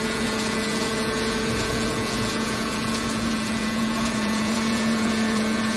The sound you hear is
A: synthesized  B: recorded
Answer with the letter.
A